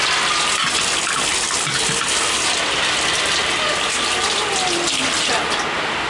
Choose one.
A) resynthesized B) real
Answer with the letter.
B